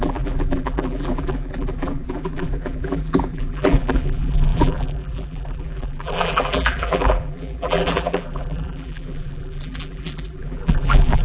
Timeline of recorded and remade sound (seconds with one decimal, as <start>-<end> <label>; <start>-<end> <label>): 0.0-11.2 remade